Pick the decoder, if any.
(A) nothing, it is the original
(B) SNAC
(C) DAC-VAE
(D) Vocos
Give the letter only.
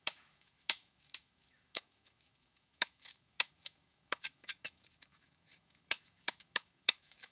C